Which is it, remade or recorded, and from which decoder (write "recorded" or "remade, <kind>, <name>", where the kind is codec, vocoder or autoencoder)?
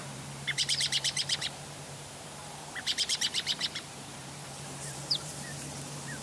remade, vocoder, BigVGAN v2